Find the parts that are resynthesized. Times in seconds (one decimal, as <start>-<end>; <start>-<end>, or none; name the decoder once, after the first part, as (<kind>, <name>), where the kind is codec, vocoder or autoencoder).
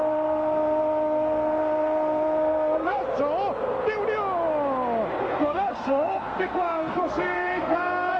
0.0-3.0 (codec, SNAC); 5.2-8.2